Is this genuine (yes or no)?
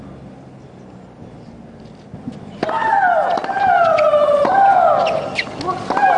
yes